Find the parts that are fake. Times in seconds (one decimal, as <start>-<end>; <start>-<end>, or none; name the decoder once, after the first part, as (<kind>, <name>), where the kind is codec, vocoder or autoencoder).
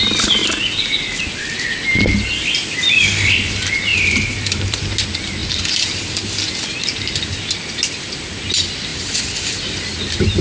3.9-4.8 (vocoder, BigVGAN v2); 5.4-6.1; 8.9-9.5